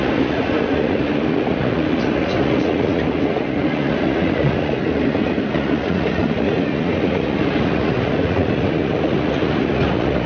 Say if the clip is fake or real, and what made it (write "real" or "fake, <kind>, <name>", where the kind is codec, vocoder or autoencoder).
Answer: fake, vocoder, Vocos